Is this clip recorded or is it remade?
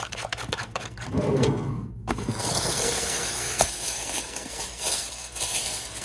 remade